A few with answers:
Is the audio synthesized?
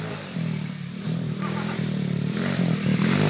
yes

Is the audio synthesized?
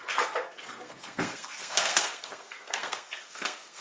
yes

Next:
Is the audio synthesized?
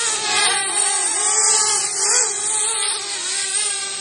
no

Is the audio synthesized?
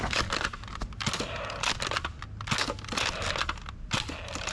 no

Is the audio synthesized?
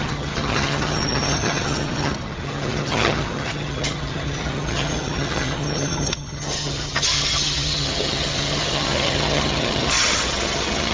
yes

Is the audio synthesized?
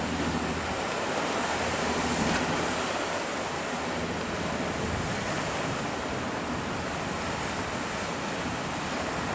no